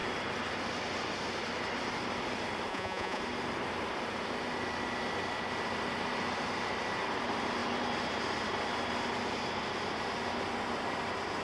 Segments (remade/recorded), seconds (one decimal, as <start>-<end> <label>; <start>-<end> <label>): 0.0-2.7 recorded; 2.7-3.2 remade; 3.2-11.4 recorded